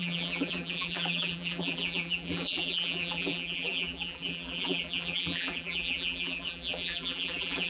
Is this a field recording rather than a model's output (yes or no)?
no